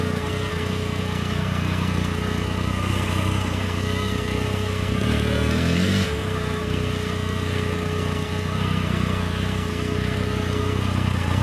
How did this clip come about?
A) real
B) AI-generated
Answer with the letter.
B